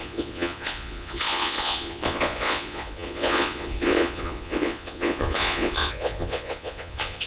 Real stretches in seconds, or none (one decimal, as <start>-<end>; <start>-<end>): none